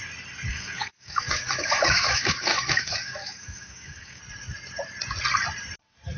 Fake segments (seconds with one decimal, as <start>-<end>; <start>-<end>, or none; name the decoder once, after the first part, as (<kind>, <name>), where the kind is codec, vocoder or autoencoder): 0.5-4.2 (autoencoder, DAC-VAE)